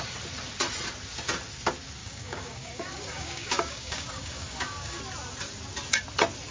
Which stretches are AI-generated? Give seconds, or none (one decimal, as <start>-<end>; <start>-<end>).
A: 2.0-5.0